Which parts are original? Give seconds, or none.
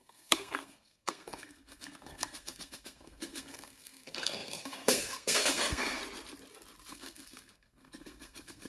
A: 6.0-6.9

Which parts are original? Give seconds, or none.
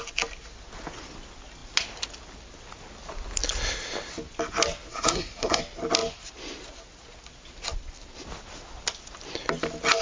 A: 0.0-4.9; 5.6-10.0